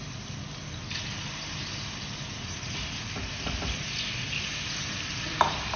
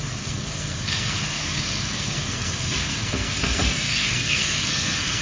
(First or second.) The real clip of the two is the first